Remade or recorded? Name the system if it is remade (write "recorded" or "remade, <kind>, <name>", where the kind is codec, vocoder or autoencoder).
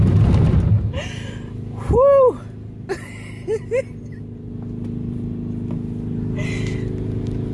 recorded